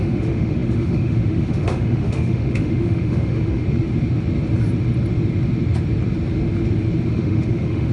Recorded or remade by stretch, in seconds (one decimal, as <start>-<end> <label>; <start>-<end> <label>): 0.0-3.6 remade; 3.6-7.1 recorded; 7.1-7.9 remade